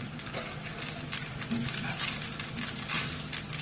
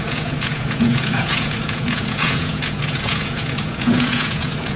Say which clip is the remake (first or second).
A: second